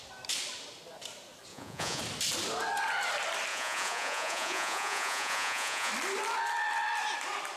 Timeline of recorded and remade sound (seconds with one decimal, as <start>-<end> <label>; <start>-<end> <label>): 0.0-1.5 recorded; 1.5-2.0 remade; 2.0-3.5 recorded; 3.5-5.9 remade; 5.9-7.6 recorded